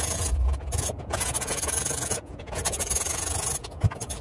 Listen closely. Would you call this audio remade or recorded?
remade